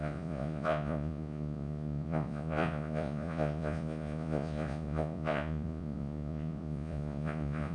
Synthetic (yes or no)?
yes